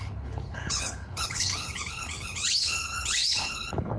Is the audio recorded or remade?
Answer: remade